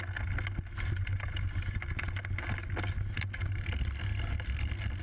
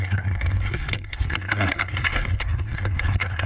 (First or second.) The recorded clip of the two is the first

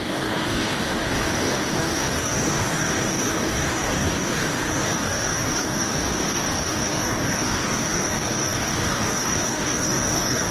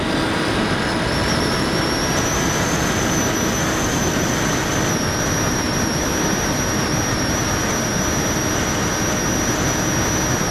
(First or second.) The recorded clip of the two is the second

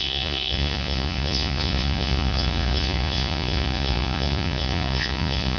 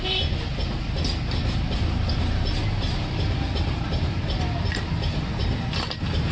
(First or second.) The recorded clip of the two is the second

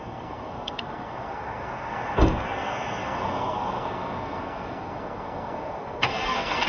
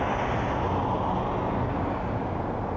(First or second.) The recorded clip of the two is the second